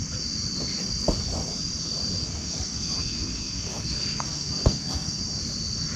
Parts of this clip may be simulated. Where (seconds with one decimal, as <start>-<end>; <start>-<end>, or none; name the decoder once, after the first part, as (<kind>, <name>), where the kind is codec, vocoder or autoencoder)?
2.2-5.2 (codec, SNAC)